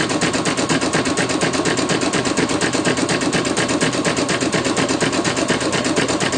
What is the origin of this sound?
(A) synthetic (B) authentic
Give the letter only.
B